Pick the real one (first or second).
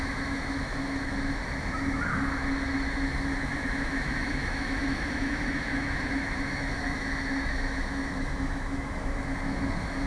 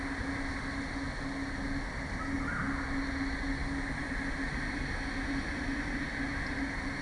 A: second